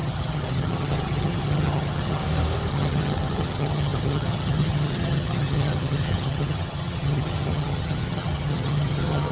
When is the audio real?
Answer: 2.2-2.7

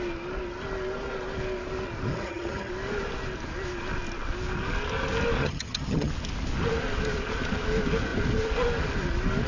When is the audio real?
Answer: 0.0-2.1; 2.7-5.4; 6.1-9.5

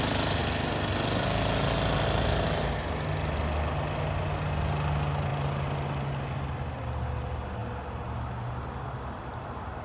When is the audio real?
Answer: 0.0-9.8

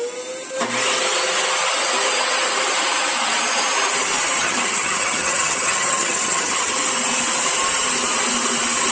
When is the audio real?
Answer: 0.0-4.4; 6.7-8.9

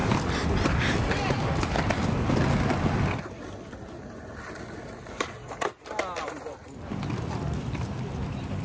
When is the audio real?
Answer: 0.0-8.6

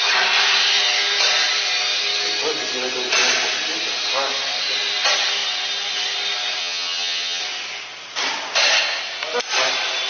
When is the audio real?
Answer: 0.0-6.6; 7.4-10.1

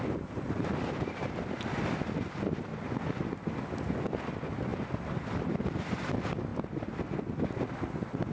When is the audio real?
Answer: 0.0-8.3